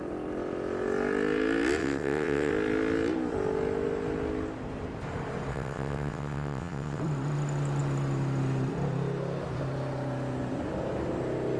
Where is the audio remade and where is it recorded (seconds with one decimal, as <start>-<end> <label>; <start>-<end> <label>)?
0.0-1.8 recorded; 1.8-2.5 remade; 2.5-5.5 recorded; 5.5-7.0 remade; 7.0-11.6 recorded